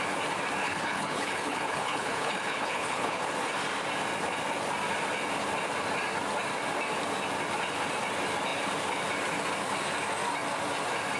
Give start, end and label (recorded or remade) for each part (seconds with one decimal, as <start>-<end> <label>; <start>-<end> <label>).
0.0-0.6 recorded; 0.6-3.3 remade; 3.3-11.2 recorded

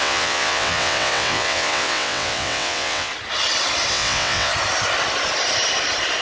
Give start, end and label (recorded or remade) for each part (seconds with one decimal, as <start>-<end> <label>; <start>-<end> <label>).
0.0-3.1 remade; 3.1-3.9 recorded; 3.9-4.5 remade; 4.5-6.2 recorded

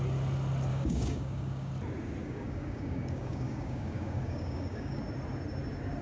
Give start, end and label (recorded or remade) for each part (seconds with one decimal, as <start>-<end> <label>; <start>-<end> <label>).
0.0-0.7 recorded; 0.7-1.7 remade; 1.7-2.2 recorded; 2.2-5.0 remade; 5.0-6.0 recorded

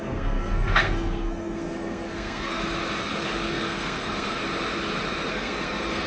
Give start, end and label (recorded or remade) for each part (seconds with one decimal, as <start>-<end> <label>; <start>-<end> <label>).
0.0-2.6 remade; 2.6-3.5 recorded; 3.5-4.4 remade; 4.4-5.3 recorded; 5.3-6.1 remade

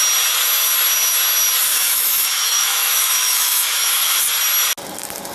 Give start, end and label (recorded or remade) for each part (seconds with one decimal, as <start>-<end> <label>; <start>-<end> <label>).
0.0-1.7 recorded; 1.7-4.2 remade; 4.2-5.3 recorded

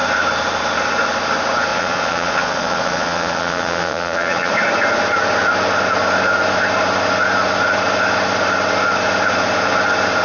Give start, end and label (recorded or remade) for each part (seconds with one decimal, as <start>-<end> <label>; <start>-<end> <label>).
0.0-1.7 recorded; 1.7-4.5 remade; 4.5-10.2 recorded

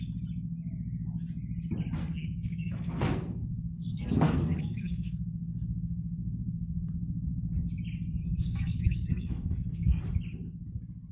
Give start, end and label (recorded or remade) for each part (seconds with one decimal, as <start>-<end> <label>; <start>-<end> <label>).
0.0-2.0 recorded; 2.0-6.9 remade; 6.9-8.2 recorded; 8.2-10.0 remade; 10.0-11.1 recorded

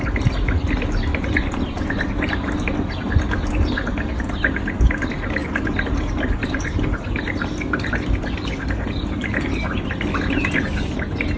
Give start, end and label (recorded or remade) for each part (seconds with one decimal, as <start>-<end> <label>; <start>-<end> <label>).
0.0-11.4 recorded